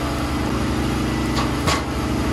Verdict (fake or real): real